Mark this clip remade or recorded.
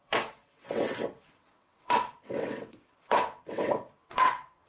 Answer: remade